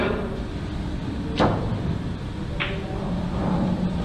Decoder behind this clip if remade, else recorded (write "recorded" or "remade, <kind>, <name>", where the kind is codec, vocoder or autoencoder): recorded